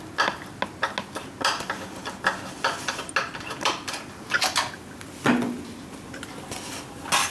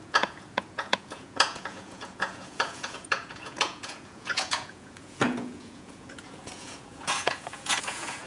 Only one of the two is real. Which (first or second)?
first